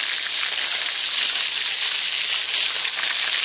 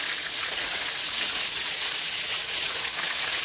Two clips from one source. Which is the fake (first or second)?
second